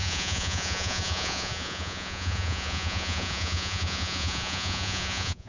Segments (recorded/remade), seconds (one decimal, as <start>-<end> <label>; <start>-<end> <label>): 0.0-5.5 remade